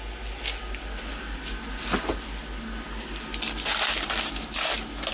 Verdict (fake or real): real